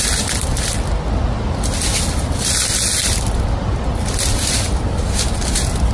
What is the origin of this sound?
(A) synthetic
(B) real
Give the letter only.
B